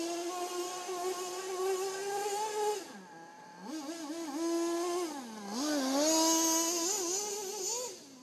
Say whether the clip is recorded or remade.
recorded